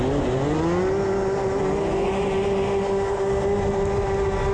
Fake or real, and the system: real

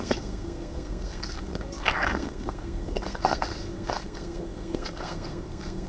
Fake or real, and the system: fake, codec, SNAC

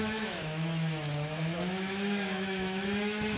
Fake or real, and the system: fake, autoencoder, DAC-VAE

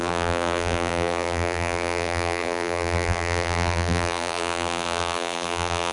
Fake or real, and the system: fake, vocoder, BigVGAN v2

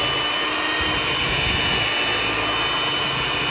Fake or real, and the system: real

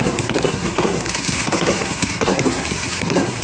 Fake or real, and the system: fake, codec, SNAC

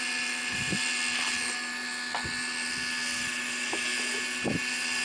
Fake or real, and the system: real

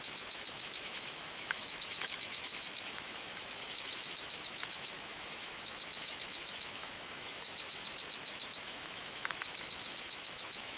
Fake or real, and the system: fake, autoencoder, DAC-VAE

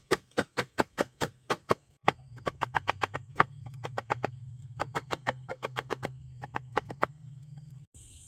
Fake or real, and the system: fake, codec, SNAC